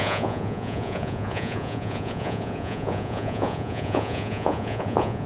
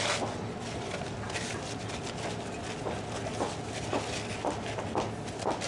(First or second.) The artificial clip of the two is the first